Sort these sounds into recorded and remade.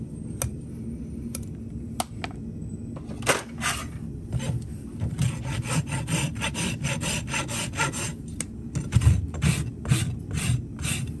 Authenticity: recorded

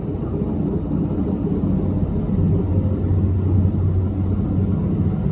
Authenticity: recorded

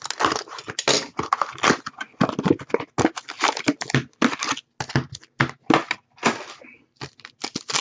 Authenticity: recorded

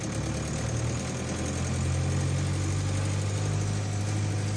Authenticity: recorded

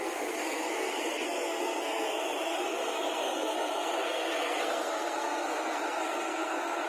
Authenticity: remade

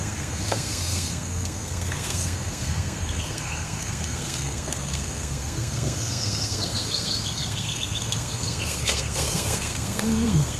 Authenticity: remade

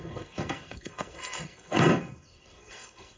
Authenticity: remade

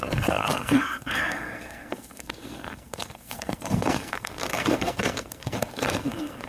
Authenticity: remade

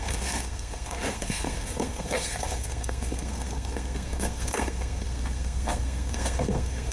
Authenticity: remade